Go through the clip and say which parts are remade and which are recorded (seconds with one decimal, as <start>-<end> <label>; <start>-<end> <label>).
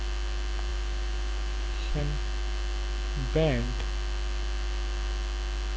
0.0-0.7 recorded; 0.7-2.0 remade; 2.0-5.8 recorded